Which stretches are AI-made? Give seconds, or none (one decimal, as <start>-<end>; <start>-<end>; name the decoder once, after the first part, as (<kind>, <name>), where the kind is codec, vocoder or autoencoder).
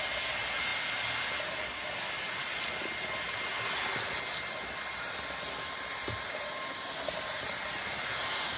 none